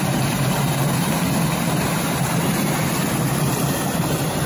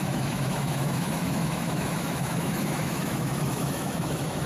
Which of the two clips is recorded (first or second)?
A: first